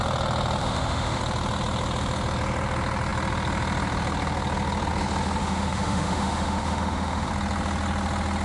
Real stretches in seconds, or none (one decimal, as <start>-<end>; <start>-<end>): 0.0-0.6; 1.2-5.4; 7.3-8.4